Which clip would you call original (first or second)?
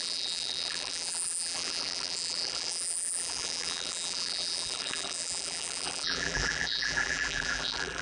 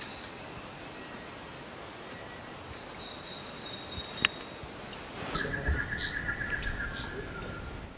second